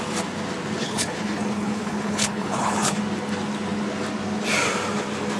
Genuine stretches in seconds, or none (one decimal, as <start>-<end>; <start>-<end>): 0.0-0.8; 3.0-5.4